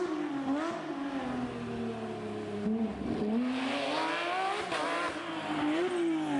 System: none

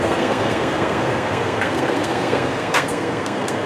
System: codec, SNAC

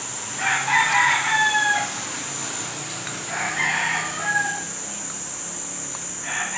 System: none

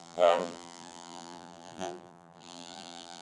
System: vocoder, BigVGAN v2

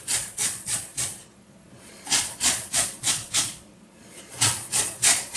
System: vocoder, Vocos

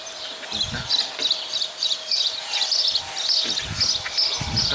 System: none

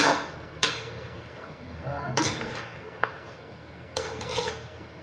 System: codec, SNAC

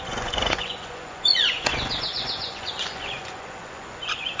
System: vocoder, Vocos